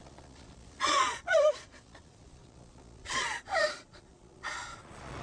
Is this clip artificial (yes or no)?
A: yes